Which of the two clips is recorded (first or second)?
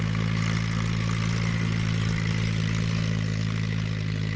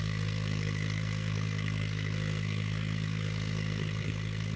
first